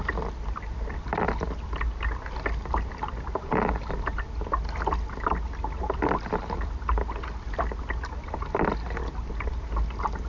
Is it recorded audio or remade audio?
recorded